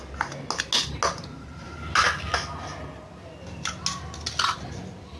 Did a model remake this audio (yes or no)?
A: no